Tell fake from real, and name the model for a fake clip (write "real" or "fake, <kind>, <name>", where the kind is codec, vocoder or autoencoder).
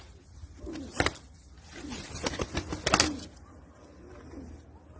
real